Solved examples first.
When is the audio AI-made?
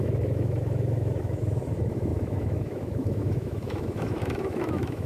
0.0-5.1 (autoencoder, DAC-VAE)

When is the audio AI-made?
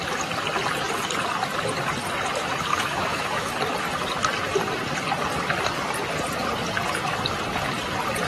2.7-3.5 (autoencoder, DAC-VAE)